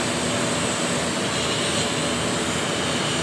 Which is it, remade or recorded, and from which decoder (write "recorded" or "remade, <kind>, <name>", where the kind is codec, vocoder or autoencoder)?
recorded